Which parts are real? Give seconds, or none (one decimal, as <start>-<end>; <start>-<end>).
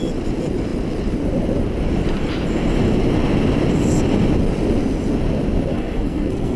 0.0-5.7